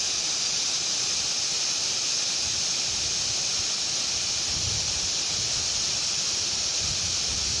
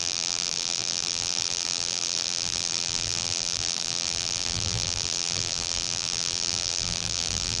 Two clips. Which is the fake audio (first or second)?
second